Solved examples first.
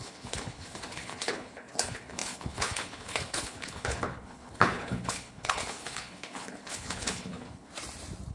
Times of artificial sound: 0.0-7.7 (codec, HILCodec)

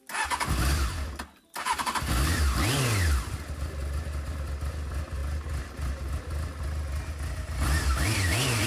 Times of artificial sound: none

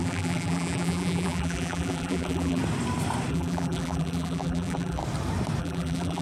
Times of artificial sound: 0.0-2.6 (vocoder, BigVGAN v2); 3.3-5.0; 5.6-6.2

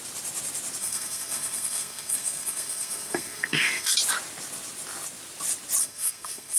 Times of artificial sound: 0.8-3.9 (codec, SNAC); 5.8-6.6

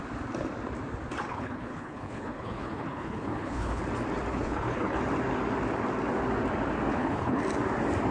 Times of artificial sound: 1.3-3.8 (codec, HILCodec); 4.3-5.0; 6.9-7.4

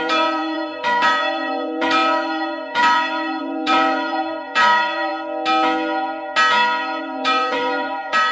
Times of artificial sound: 0.0-5.1 (vocoder, BigVGAN v2); 7.0-8.3